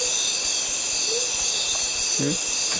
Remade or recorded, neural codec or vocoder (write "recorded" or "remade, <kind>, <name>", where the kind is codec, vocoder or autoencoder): recorded